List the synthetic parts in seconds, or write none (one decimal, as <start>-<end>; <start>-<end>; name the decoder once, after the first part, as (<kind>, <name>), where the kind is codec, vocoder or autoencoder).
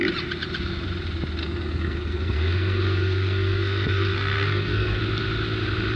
1.4-5.0 (codec, SNAC)